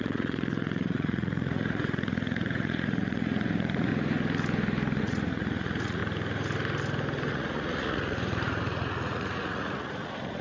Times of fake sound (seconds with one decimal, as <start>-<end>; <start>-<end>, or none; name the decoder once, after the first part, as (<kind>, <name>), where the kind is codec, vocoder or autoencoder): 0.0-3.9 (vocoder, Vocos); 5.0-6.0; 7.3-10.4